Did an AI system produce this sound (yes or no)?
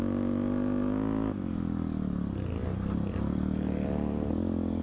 no